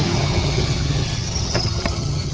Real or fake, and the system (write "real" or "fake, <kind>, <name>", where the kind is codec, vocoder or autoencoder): fake, vocoder, HiFi-GAN